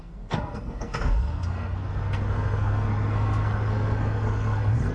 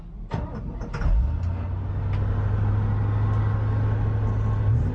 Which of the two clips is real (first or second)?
second